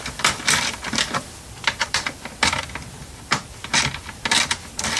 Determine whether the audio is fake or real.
fake